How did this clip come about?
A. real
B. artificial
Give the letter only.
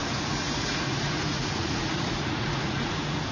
B